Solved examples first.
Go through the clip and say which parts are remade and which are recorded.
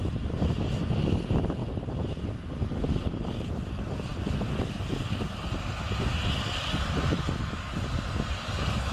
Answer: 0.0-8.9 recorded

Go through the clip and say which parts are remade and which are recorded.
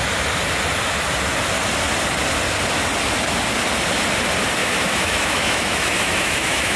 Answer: 0.0-4.6 recorded; 4.6-6.8 remade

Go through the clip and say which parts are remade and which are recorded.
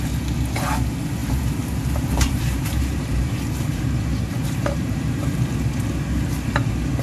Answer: 0.0-1.2 recorded; 1.2-5.3 remade; 5.3-7.0 recorded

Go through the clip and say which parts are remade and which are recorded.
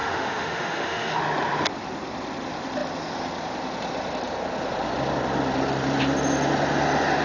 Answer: 0.0-1.2 remade; 1.2-7.2 recorded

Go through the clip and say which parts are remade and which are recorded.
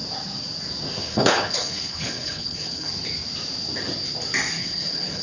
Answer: 0.0-1.0 recorded; 1.0-2.9 remade; 2.9-4.6 recorded; 4.6-5.2 remade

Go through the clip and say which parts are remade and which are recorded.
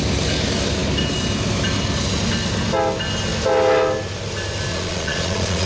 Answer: 0.0-4.7 recorded; 4.7-5.7 remade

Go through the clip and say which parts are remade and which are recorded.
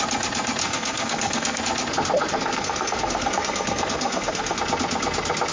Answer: 0.0-0.6 recorded; 0.6-1.6 remade; 1.6-2.3 recorded; 2.3-4.6 remade; 4.6-5.5 recorded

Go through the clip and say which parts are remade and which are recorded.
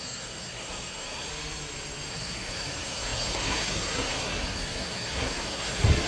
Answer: 0.0-1.3 remade; 1.3-2.1 recorded; 2.1-6.1 remade